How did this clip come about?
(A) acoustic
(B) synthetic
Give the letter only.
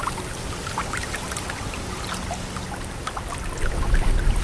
A